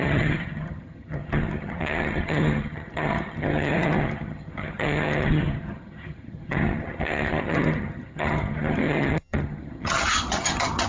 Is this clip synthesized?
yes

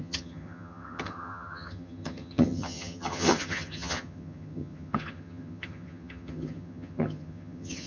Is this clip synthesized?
yes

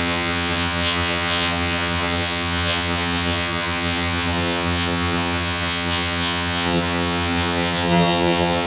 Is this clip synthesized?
yes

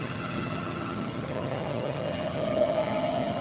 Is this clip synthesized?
yes